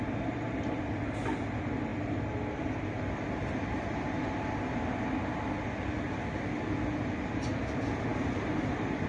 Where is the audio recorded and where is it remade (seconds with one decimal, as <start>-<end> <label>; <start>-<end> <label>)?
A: 0.0-9.1 recorded